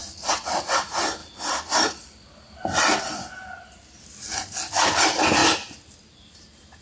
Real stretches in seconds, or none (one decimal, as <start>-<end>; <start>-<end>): 0.0-1.2; 4.0-6.8